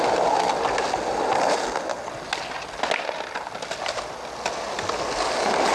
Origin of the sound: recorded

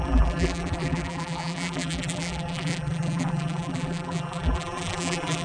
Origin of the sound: remade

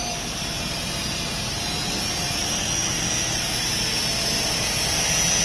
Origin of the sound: recorded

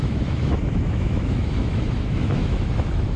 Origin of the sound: remade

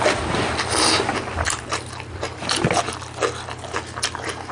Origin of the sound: recorded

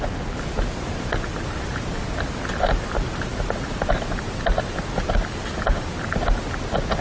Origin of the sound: recorded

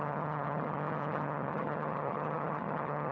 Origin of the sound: remade